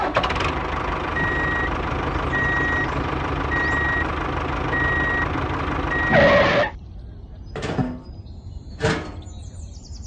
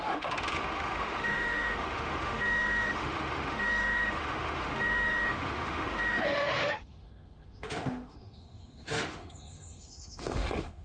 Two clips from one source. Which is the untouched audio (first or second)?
first